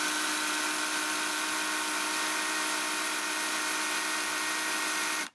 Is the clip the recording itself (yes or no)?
yes